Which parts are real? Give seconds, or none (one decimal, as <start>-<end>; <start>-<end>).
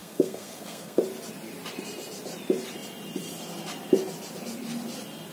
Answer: 1.0-5.3